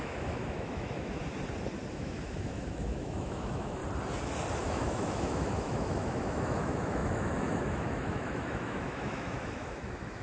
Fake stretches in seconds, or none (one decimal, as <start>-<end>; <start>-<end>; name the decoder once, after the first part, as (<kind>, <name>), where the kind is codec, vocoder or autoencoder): 0.0-1.2 (autoencoder, DAC-VAE); 1.9-3.8; 4.6-10.2